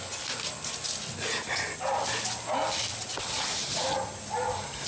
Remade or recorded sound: recorded